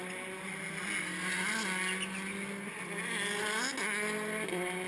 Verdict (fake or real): real